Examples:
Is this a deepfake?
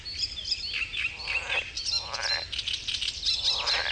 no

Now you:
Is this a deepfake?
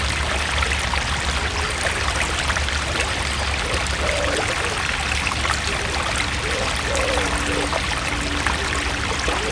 no